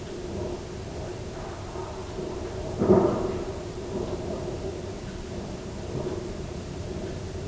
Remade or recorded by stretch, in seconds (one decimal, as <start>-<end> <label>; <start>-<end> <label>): 0.0-2.0 recorded; 2.0-6.3 remade; 6.3-7.5 recorded